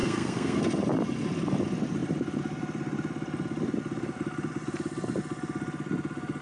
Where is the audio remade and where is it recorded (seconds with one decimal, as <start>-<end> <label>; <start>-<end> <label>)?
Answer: 0.0-0.6 remade; 0.6-6.4 recorded